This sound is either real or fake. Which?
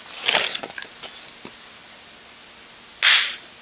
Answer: real